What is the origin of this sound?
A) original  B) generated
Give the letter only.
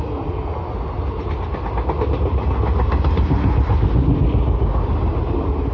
A